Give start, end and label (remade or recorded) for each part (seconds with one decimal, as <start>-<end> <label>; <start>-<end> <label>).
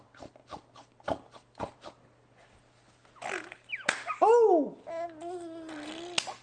0.0-6.4 recorded